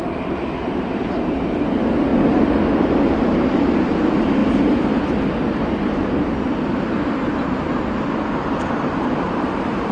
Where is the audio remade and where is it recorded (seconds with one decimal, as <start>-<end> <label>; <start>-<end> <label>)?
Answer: 0.0-2.1 remade; 2.1-3.1 recorded; 3.1-4.4 remade; 4.4-8.4 recorded; 8.4-9.9 remade